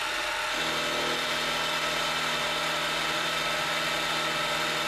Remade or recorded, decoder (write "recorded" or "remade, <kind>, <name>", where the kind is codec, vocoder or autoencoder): recorded